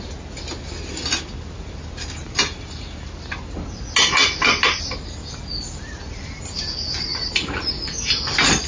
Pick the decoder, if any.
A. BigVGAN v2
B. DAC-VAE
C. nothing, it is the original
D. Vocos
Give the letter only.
C